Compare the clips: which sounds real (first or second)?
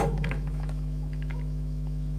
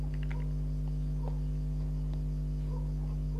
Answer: second